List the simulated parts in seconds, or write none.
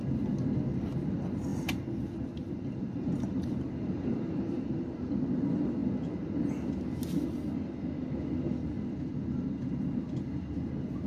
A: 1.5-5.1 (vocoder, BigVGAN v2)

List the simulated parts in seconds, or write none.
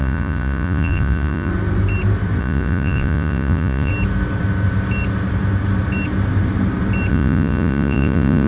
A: 0.0-1.5 (vocoder, Vocos); 2.4-3.9; 7.1-8.5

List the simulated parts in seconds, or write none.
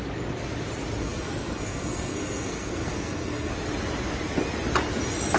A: 1.0-3.5 (codec, SNAC)